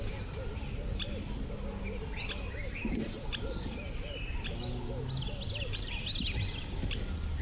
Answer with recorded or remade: recorded